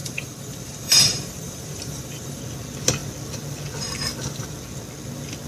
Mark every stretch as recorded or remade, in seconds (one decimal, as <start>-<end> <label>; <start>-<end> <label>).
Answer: 0.0-2.4 remade; 2.4-5.5 recorded